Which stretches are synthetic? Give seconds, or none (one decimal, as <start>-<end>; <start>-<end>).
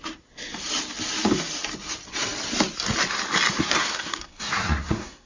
3.6-5.3